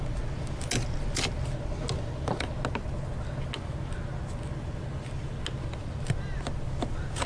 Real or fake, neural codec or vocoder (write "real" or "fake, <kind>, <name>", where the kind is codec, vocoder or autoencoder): real